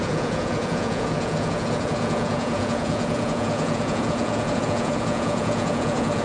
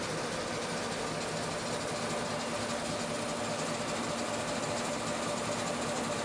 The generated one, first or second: first